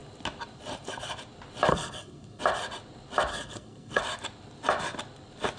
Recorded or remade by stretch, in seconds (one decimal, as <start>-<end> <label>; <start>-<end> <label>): 0.0-1.7 recorded; 1.7-2.4 remade; 2.4-3.3 recorded; 3.3-4.0 remade; 4.0-5.6 recorded